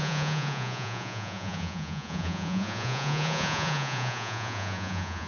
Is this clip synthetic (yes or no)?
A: yes